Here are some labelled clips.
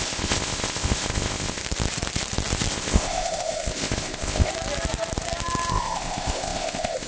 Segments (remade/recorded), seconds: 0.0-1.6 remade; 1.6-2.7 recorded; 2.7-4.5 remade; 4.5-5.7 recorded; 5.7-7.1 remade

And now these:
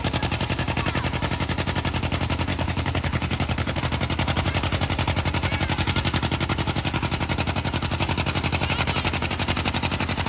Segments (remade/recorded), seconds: 0.0-2.5 recorded; 2.5-3.8 remade; 3.8-10.3 recorded

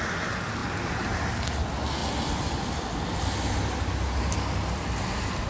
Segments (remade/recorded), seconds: 0.0-5.5 recorded

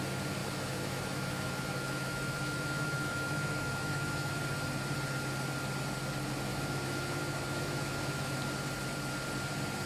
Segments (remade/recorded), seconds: 0.0-0.4 recorded; 0.4-4.4 remade; 4.4-6.5 recorded; 6.5-8.3 remade; 8.3-9.9 recorded